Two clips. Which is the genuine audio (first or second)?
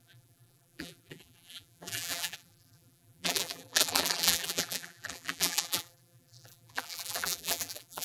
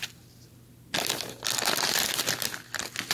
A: second